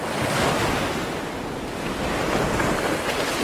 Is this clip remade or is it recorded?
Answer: recorded